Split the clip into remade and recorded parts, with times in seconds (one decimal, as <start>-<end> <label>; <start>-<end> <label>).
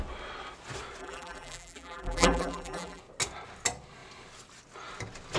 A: 0.0-1.0 recorded; 1.0-3.0 remade; 3.0-5.4 recorded